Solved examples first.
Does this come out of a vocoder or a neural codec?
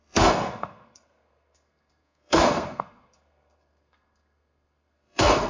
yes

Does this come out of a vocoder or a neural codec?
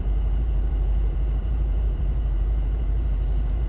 yes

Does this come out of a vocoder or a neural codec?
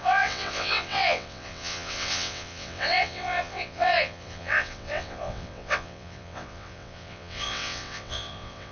yes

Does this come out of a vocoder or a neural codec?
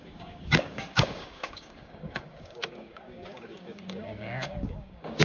yes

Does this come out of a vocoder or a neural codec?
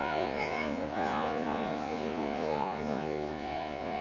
yes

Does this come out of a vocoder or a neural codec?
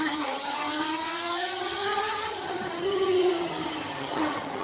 yes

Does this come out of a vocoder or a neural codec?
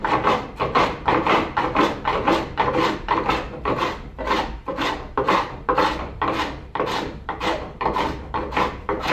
yes